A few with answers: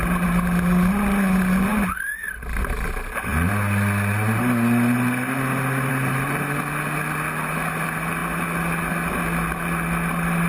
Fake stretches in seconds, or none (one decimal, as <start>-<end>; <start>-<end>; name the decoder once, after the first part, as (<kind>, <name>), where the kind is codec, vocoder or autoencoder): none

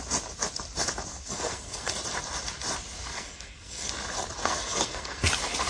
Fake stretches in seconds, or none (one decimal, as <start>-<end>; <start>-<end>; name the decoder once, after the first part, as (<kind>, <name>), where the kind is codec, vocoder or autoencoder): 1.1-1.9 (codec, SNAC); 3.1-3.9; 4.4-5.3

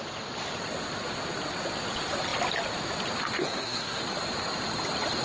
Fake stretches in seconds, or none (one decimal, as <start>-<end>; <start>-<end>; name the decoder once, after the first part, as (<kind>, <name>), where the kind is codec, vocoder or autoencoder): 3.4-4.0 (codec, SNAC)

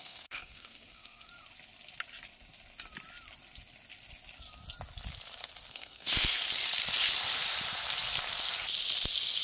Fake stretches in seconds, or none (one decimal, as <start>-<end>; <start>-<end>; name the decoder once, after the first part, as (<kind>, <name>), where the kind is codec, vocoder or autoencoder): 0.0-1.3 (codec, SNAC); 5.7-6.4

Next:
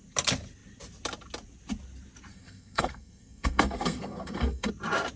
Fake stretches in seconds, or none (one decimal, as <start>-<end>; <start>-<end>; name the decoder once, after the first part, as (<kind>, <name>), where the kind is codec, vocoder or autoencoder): 2.3-4.7 (codec, SNAC)

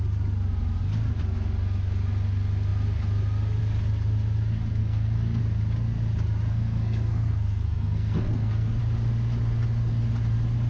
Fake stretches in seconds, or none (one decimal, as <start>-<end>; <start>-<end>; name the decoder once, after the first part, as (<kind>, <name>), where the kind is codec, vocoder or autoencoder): 4.8-5.4 (codec, SNAC); 6.5-8.8

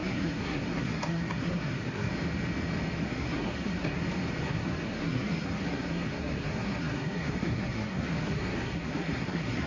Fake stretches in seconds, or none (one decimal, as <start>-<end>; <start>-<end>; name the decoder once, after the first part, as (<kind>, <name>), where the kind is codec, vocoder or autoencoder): 0.0-2.1 (codec, SNAC); 3.0-4.0; 4.4-9.7

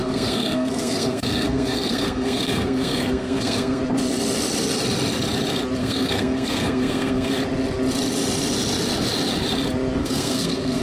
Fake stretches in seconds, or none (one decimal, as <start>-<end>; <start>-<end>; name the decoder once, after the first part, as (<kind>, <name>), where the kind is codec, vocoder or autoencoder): 0.0-3.8 (codec, SNAC); 5.8-7.3; 10.0-10.8